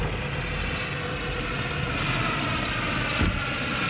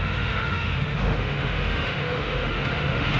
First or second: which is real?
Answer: first